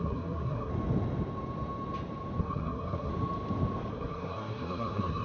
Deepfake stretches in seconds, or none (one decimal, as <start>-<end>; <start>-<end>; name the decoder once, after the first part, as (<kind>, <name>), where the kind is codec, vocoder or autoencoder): 0.0-0.7 (codec, SNAC); 2.4-3.1; 3.9-5.2